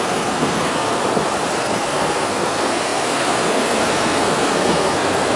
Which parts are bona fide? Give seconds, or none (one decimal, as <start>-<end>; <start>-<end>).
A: 1.0-1.6